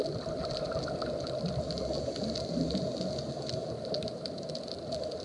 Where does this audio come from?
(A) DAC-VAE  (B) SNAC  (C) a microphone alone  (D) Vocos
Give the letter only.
C